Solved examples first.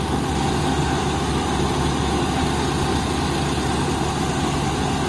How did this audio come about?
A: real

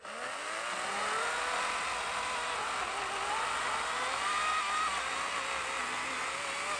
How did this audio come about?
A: real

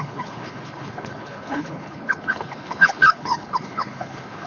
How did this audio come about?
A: fake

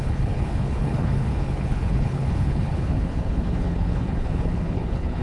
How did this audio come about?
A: fake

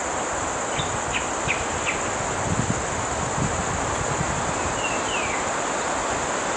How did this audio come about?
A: real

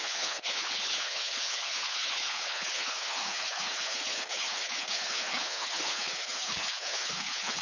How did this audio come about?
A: fake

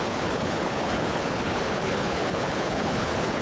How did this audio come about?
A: fake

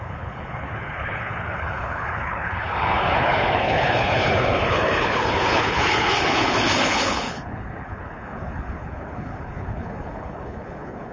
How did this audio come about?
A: fake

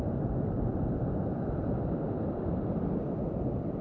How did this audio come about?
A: real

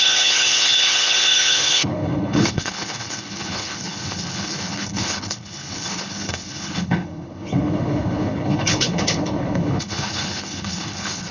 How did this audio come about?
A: fake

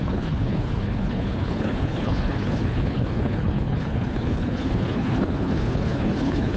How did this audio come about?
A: fake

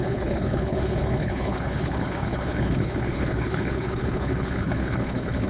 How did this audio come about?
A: fake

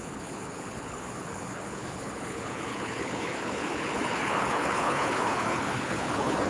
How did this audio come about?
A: fake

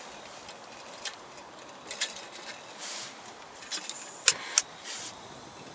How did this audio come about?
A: real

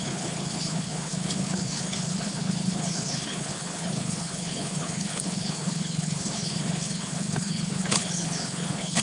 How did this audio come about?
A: fake